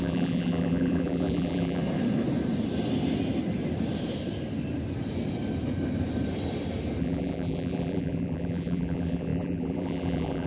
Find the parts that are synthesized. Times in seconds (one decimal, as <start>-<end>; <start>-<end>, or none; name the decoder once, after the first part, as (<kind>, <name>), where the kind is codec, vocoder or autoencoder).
0.0-1.8 (vocoder, BigVGAN v2); 7.0-10.5